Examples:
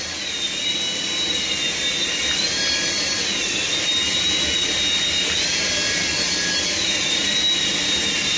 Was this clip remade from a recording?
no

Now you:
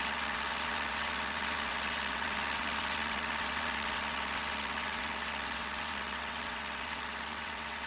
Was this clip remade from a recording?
yes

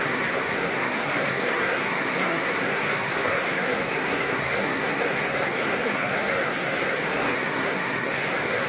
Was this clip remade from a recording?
yes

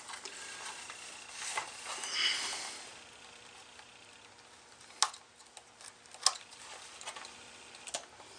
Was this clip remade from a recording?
no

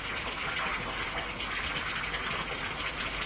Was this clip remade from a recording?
no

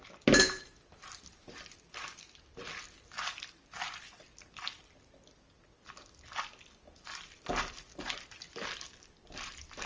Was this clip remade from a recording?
no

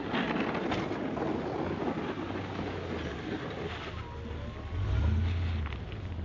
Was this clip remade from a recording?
no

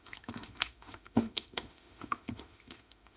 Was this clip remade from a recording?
yes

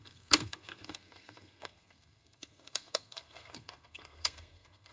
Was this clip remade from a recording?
yes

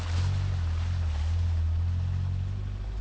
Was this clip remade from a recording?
no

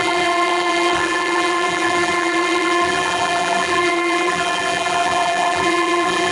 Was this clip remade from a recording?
yes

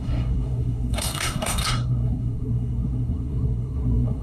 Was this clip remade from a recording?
yes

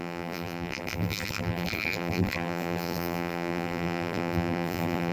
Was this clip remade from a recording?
yes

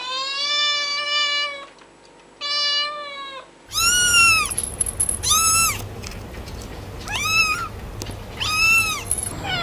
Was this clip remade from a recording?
no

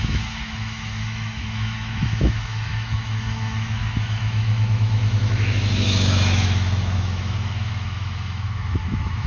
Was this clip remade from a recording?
yes